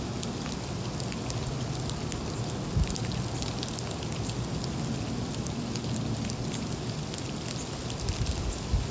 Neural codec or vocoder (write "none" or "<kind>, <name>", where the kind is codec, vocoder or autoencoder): none